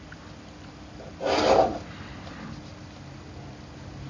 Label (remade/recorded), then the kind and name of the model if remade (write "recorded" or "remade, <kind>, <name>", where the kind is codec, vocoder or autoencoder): recorded